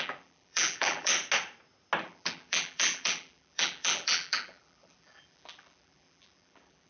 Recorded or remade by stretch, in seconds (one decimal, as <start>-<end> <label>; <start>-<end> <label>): 0.0-1.1 remade; 1.1-2.0 recorded; 2.0-6.9 remade